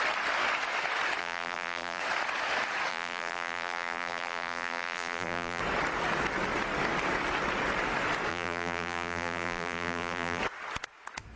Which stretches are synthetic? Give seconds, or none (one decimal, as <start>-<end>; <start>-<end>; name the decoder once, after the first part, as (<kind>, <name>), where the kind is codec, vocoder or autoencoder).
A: 1.2-2.0 (vocoder, BigVGAN v2); 2.9-5.6; 8.3-10.4

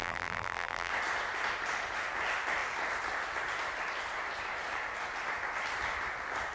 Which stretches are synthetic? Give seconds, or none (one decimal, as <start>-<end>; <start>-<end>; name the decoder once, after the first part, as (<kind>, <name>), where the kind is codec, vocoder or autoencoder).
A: 0.0-0.9 (vocoder, BigVGAN v2)

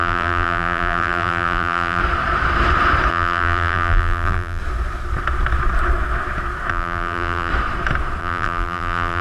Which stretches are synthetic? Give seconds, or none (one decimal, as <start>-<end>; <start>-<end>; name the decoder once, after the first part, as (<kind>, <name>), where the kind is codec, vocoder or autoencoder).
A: 0.0-2.0 (vocoder, BigVGAN v2); 3.1-4.6; 6.7-7.5; 8.2-9.2

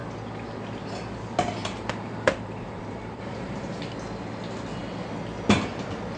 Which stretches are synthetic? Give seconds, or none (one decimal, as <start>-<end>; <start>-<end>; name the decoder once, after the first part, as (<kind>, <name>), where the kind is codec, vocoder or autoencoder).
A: 1.6-3.7 (vocoder, BigVGAN v2)

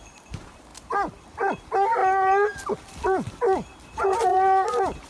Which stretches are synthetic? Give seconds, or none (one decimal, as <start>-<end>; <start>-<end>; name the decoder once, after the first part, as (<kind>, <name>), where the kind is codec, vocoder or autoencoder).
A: 0.0-0.7 (vocoder, BigVGAN v2); 1.6-2.0; 3.3-5.1

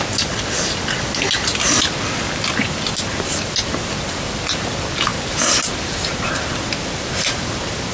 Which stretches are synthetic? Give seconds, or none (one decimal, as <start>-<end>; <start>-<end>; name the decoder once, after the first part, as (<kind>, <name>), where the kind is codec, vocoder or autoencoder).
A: none

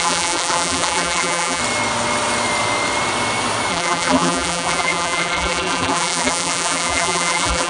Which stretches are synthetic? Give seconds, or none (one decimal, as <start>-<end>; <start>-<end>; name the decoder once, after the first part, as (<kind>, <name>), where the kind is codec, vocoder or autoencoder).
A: 0.0-1.6 (vocoder, BigVGAN v2); 3.7-7.7